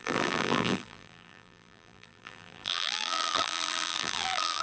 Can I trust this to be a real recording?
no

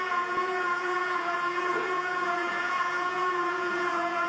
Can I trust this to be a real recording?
no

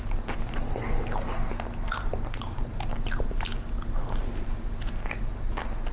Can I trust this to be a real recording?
yes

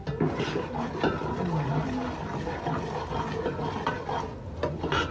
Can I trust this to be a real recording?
yes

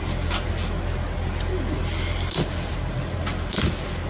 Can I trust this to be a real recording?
yes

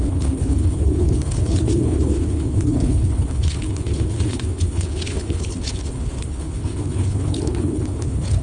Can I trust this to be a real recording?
no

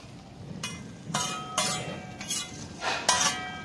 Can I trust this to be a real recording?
yes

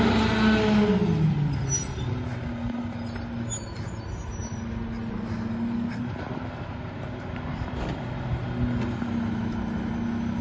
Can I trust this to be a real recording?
yes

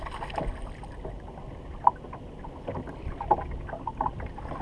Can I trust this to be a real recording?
yes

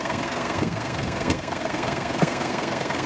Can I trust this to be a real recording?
no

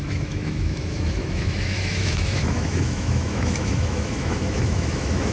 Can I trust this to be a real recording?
no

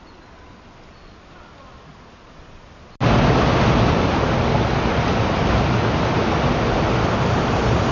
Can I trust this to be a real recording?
yes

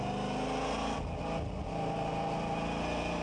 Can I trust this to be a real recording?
yes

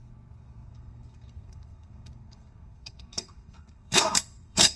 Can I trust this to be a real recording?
no